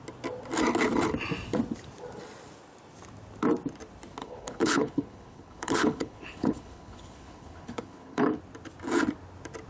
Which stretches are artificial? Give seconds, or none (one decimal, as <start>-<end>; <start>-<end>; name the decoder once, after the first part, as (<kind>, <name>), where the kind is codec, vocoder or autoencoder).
4.2-8.4 (codec, HILCodec)